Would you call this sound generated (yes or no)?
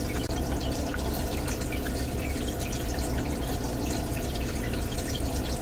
no